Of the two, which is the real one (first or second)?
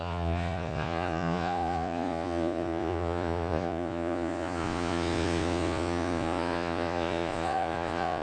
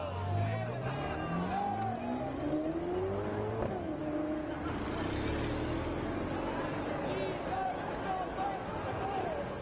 second